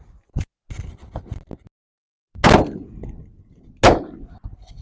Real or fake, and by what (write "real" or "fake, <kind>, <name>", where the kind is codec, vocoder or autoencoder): real